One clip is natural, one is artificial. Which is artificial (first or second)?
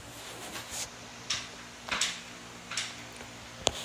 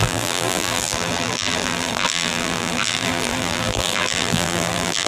second